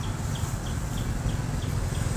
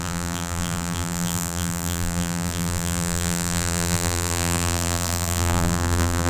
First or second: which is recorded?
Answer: first